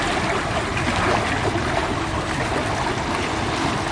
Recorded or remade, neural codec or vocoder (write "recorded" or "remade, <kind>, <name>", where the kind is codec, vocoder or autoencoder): recorded